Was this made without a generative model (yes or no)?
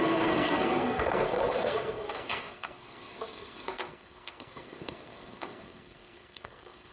no